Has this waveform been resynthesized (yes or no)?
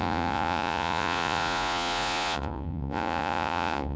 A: yes